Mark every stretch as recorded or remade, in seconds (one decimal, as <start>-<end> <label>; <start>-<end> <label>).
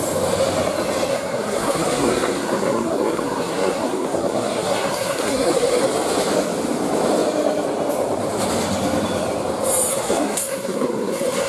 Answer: 0.0-1.1 recorded; 1.1-5.8 remade; 5.8-9.9 recorded; 9.9-11.5 remade